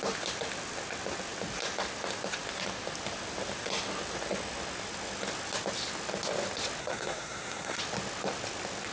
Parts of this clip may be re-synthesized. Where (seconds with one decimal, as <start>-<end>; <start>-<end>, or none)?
6.8-7.8